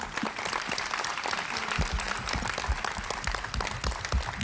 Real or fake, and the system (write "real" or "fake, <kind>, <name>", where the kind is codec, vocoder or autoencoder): real